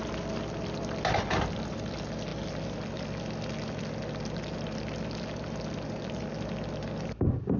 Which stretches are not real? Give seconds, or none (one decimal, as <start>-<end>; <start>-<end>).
none